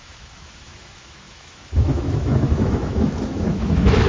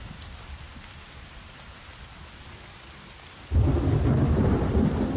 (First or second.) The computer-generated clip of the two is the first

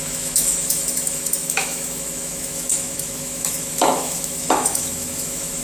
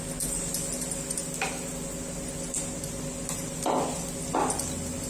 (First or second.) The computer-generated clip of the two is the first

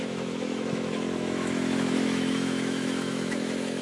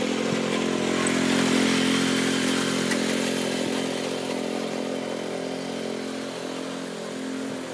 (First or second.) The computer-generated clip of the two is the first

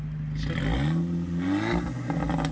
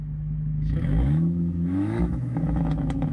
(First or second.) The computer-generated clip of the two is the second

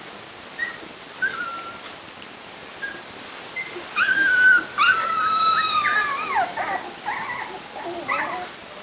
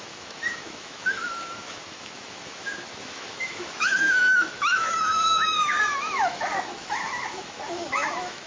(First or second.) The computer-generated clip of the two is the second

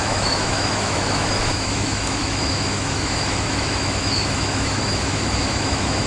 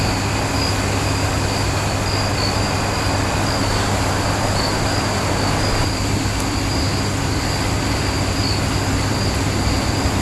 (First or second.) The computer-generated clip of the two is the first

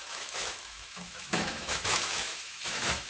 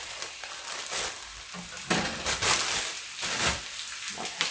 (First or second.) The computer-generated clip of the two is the first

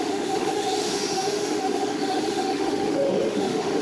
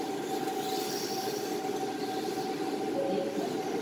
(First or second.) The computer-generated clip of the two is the first